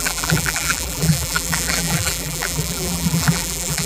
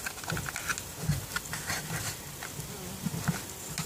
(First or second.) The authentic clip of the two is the second